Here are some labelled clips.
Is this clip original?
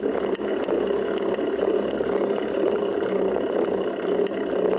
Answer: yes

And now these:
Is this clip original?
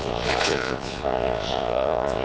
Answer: no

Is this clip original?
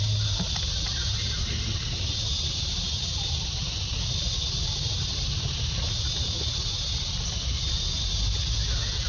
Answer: yes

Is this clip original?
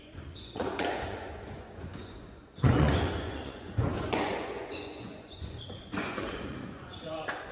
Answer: no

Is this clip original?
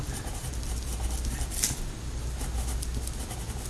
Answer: yes